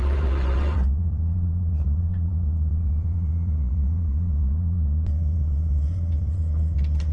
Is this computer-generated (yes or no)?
yes